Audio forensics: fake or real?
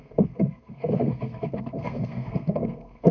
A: fake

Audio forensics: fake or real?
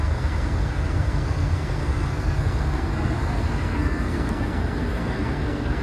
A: fake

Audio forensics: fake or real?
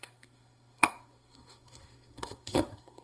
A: fake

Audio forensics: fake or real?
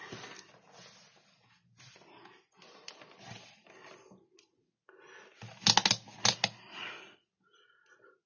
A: real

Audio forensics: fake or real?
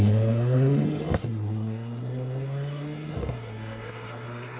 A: fake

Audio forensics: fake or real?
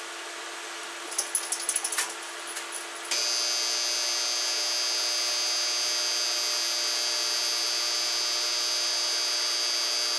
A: real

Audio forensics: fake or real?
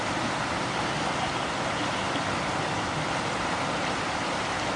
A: real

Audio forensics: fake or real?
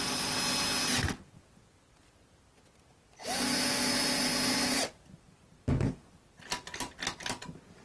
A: real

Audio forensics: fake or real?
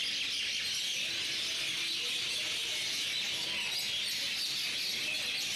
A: real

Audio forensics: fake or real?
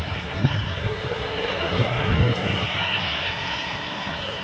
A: fake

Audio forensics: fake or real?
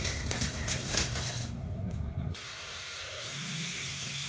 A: fake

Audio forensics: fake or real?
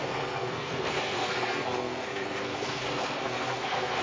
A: fake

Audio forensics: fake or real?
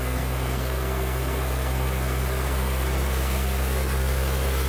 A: fake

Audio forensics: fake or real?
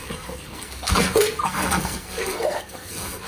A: fake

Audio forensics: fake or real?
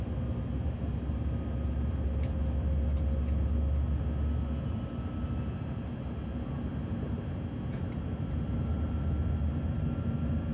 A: real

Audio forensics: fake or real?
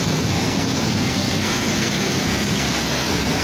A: fake